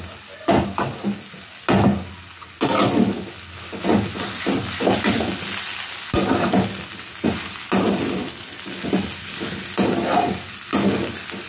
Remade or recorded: recorded